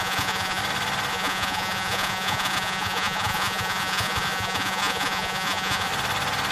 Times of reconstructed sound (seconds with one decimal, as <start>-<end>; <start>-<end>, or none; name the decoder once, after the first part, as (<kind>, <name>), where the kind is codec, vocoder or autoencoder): 0.0-0.6 (vocoder, Vocos); 1.1-5.9